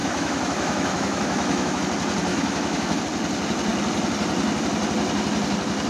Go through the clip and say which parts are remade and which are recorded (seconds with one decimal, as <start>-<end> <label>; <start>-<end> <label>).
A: 0.0-1.8 remade; 1.8-2.3 recorded; 2.3-3.0 remade; 3.0-5.9 recorded